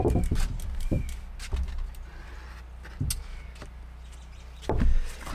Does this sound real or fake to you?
real